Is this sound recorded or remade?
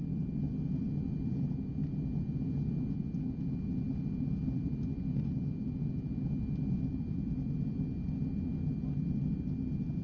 recorded